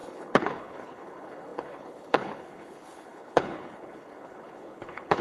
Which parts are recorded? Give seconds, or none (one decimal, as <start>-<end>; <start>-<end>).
none